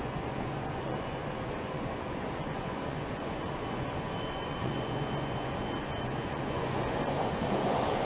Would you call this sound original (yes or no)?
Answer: no